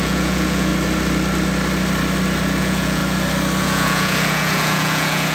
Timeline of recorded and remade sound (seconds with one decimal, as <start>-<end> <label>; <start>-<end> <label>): 0.0-0.7 remade; 0.7-2.6 recorded; 2.6-3.0 remade; 3.0-3.6 recorded; 3.6-5.3 remade